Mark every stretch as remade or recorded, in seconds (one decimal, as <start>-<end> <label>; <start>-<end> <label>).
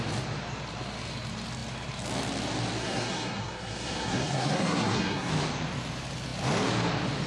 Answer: 0.0-2.8 recorded; 2.8-5.3 remade; 5.3-7.3 recorded